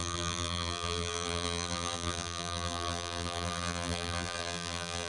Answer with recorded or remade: remade